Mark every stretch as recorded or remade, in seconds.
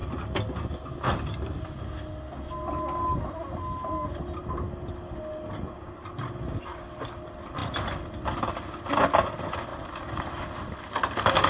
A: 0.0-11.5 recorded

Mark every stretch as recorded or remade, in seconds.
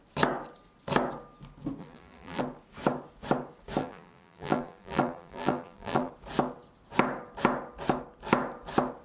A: 0.0-1.8 recorded; 1.8-2.4 remade; 2.4-3.8 recorded; 3.8-6.1 remade; 6.1-9.0 recorded